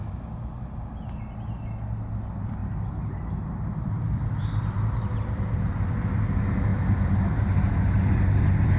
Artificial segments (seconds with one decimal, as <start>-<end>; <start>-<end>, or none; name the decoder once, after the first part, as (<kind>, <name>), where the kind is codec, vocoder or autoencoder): 2.6-5.7 (vocoder, BigVGAN v2); 6.7-8.0